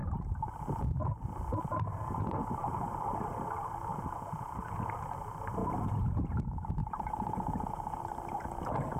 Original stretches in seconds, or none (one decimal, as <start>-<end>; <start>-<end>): 0.0-3.9; 5.1-5.6; 6.1-6.8; 8.0-9.0